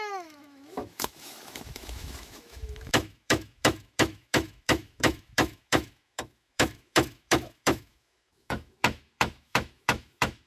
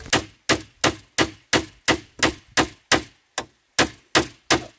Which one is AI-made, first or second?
first